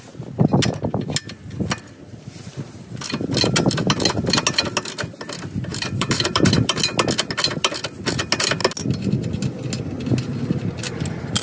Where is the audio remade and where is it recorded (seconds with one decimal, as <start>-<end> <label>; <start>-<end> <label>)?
0.0-5.7 recorded; 5.7-6.8 remade; 6.8-11.4 recorded